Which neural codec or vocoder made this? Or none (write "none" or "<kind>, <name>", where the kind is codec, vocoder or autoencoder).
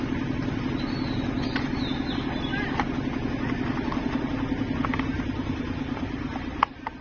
none